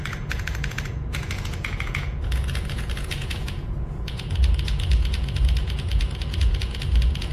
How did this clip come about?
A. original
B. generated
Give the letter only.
B